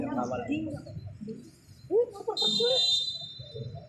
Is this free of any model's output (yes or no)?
yes